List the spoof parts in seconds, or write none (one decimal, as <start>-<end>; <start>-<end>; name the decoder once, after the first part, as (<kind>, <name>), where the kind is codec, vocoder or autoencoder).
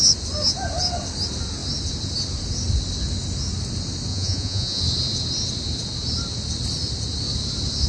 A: 4.1-4.8 (vocoder, Vocos)